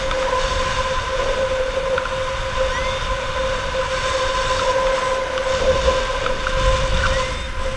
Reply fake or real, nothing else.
real